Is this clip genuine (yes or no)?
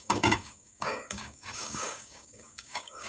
no